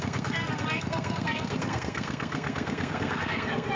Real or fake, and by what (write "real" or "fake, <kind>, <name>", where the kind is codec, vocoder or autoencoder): fake, codec, SNAC